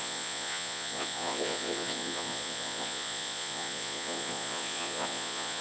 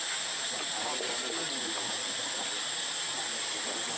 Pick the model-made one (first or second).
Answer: first